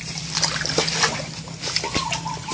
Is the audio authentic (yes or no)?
yes